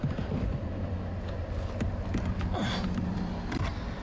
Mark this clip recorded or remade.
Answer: recorded